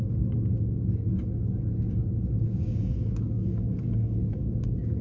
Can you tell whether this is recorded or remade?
remade